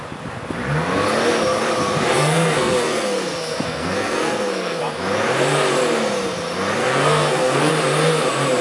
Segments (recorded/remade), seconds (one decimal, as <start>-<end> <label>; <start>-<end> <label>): 0.0-2.1 recorded; 2.1-4.8 remade; 4.8-6.8 recorded; 6.8-7.7 remade; 7.7-8.6 recorded